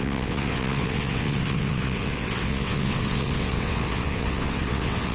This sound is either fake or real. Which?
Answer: fake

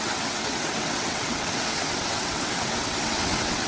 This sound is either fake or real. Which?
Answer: fake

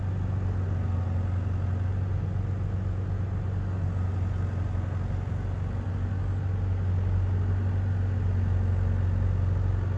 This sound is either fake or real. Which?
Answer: real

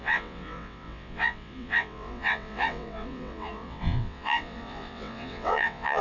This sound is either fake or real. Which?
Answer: fake